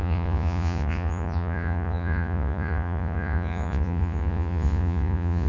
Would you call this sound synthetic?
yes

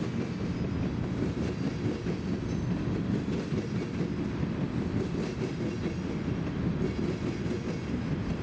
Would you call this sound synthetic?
no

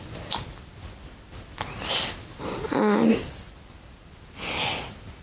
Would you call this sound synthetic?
no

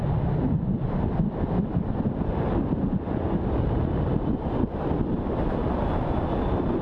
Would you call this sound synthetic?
no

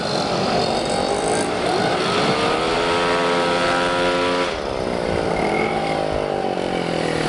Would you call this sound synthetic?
no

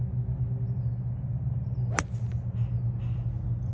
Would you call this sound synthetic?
no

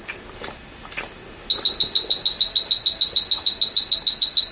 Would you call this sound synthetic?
no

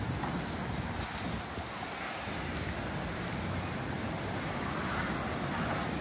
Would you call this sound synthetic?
no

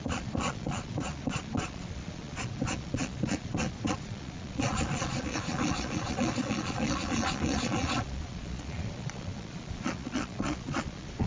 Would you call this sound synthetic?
yes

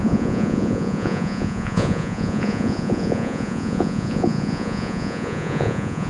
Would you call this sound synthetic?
yes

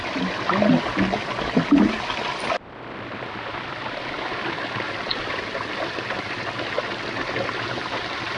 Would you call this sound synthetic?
no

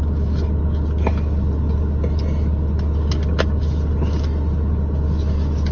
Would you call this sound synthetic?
no